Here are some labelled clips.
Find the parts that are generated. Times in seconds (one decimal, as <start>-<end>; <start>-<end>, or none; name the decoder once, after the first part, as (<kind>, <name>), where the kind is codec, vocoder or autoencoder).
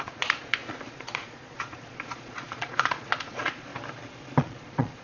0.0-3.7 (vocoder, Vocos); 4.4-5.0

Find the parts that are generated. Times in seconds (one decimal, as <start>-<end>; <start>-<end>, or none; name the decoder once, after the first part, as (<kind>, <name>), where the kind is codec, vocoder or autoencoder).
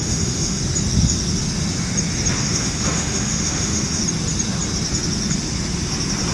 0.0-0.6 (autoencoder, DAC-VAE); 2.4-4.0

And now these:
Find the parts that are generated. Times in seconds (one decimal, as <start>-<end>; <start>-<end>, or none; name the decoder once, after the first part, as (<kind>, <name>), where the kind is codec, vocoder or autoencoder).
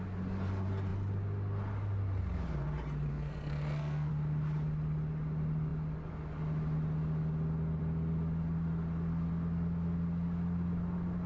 3.1-4.1 (codec, SNAC)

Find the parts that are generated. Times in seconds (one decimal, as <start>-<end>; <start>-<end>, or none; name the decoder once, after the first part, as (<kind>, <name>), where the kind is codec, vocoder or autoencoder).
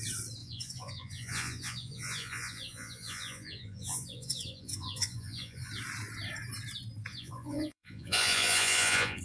0.4-5.7 (vocoder, Vocos); 7.1-9.2